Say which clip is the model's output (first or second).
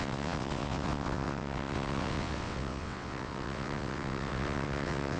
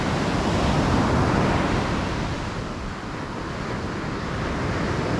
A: first